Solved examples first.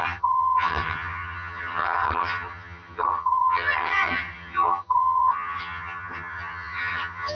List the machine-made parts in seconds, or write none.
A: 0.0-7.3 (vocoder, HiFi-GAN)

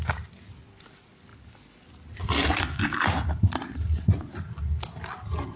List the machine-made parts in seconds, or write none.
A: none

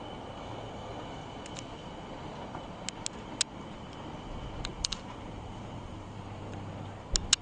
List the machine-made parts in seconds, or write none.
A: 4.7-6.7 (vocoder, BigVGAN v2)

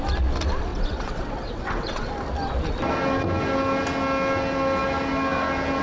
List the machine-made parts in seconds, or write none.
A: 0.7-2.1 (vocoder, WaveNeXt)

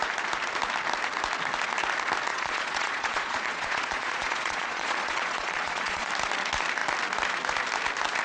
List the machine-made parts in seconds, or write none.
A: 2.3-6.1 (vocoder, Vocos)